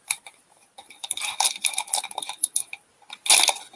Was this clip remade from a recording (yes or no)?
no